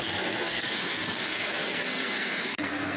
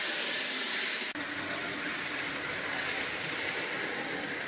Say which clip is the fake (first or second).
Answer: first